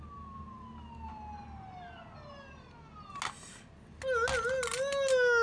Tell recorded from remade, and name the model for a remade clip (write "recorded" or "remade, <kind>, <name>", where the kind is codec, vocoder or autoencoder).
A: recorded